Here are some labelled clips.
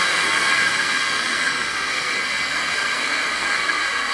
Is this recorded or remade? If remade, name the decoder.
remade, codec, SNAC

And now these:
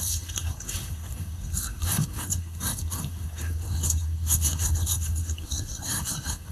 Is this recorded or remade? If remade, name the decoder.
remade, codec, SNAC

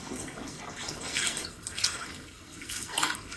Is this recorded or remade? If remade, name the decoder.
remade, codec, SNAC